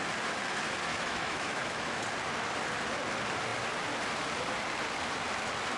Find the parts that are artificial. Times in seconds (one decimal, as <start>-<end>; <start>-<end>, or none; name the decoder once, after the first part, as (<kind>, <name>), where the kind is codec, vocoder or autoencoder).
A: 0.9-2.0 (autoencoder, DAC-VAE)